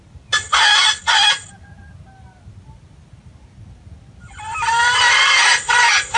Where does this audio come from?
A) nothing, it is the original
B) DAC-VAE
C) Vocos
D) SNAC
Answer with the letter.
A